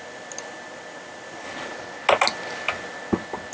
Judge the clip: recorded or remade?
recorded